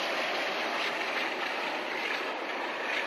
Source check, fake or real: real